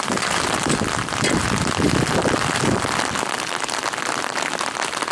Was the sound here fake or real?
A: real